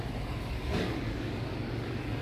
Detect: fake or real fake